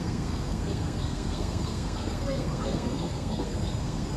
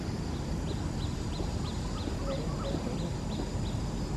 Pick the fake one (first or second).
first